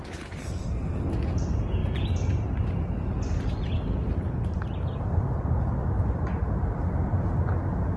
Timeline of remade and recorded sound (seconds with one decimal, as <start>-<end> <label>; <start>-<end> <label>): 0.0-0.4 recorded; 0.4-1.1 remade; 1.1-8.0 recorded